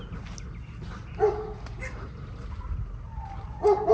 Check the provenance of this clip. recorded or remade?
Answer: recorded